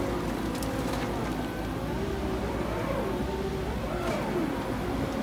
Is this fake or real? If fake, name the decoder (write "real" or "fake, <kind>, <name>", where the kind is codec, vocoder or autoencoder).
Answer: real